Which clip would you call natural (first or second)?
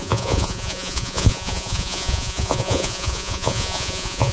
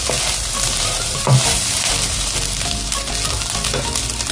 second